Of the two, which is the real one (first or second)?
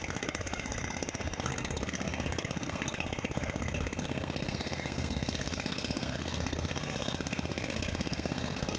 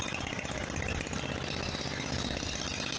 second